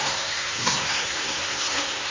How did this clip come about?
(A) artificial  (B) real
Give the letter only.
A